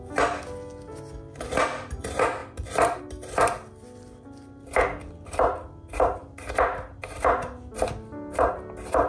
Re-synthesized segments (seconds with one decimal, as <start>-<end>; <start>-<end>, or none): none